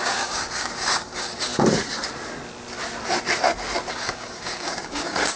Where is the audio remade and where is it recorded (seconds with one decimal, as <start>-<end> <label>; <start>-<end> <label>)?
0.0-1.5 remade; 1.5-3.9 recorded; 3.9-5.4 remade